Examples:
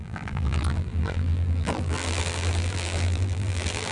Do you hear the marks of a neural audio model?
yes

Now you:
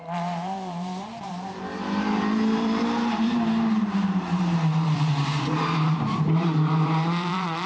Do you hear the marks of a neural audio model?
yes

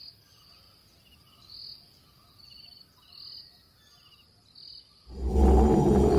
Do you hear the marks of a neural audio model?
no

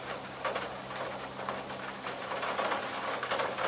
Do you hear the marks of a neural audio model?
yes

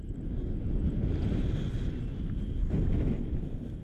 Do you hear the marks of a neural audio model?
no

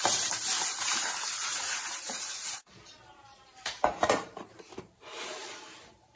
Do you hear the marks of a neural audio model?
yes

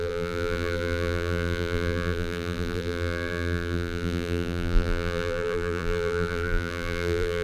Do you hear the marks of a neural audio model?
yes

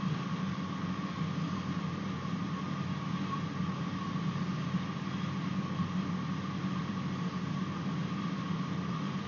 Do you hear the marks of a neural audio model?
yes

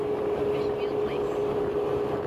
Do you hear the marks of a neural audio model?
no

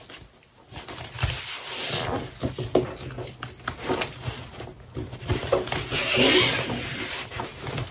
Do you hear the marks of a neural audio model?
no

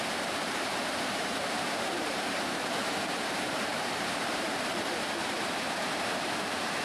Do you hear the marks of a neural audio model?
yes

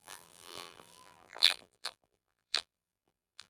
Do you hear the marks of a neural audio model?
yes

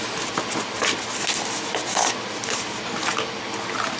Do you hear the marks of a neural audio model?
no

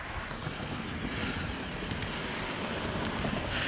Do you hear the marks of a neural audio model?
no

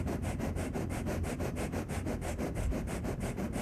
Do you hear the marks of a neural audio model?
yes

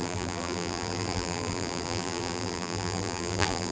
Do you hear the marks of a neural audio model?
yes